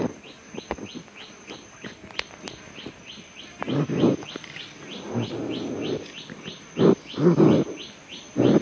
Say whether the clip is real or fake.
real